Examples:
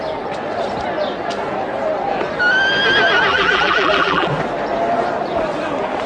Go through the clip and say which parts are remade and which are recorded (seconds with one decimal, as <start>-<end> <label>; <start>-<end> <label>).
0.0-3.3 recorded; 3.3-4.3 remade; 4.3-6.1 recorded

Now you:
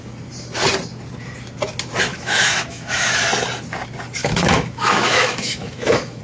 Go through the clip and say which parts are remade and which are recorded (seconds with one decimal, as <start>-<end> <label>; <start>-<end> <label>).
0.0-2.1 recorded; 2.1-3.2 remade; 3.2-4.2 recorded; 4.2-6.2 remade

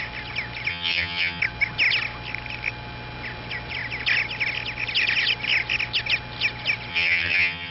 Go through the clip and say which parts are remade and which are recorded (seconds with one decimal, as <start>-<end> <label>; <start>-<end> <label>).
0.0-0.7 recorded; 0.7-1.4 remade; 1.4-6.9 recorded; 6.9-7.7 remade

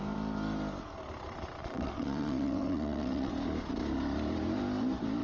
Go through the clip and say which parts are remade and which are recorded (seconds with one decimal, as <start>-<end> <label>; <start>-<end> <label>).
0.0-1.6 recorded; 1.6-3.3 remade; 3.3-5.2 recorded

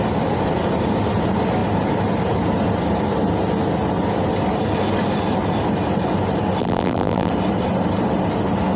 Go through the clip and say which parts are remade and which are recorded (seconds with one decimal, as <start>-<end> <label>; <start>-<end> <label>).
0.0-6.6 recorded; 6.6-7.3 remade; 7.3-8.8 recorded

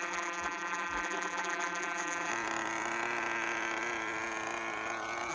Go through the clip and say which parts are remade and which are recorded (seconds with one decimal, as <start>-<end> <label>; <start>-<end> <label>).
0.0-2.3 remade; 2.3-5.3 recorded